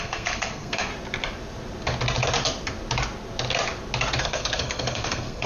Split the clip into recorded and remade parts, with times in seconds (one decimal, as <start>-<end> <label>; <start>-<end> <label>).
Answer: 0.0-0.9 remade; 0.9-4.2 recorded; 4.2-5.5 remade